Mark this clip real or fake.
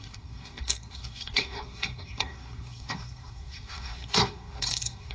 fake